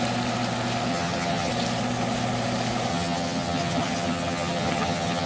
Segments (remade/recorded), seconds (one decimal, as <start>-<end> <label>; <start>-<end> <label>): 0.0-0.9 recorded; 0.9-1.5 remade; 1.5-2.9 recorded; 2.9-5.3 remade